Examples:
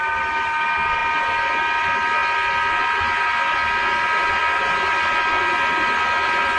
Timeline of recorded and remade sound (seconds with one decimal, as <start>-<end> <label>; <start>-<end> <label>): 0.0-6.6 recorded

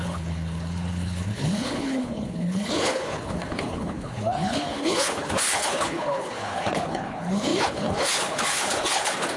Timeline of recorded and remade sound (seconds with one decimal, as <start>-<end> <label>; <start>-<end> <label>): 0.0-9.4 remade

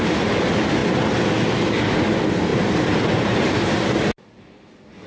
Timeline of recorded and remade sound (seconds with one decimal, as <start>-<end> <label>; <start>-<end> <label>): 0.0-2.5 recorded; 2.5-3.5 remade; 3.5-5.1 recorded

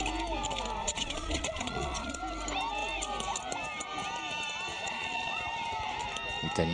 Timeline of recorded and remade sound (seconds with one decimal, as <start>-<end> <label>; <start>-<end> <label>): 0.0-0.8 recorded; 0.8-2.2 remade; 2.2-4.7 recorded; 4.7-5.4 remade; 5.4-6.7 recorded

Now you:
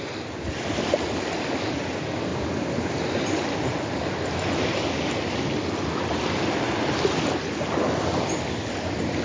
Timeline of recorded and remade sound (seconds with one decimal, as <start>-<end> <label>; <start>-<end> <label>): 0.0-9.2 recorded

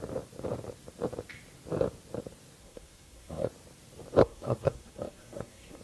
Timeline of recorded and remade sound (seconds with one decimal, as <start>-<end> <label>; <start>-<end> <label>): 0.0-2.6 recorded; 2.6-3.5 remade; 3.5-4.2 recorded; 4.2-5.8 remade

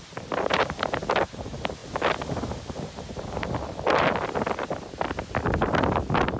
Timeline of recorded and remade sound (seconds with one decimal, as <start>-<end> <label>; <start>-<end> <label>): 0.0-6.4 recorded

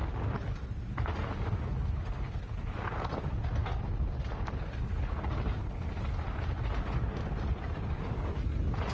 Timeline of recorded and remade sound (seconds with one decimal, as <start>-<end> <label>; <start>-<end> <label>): 0.0-8.9 recorded